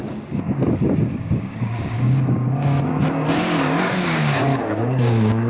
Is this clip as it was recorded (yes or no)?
no